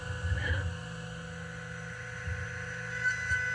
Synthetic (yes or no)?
no